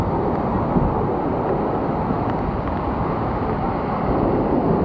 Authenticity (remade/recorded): recorded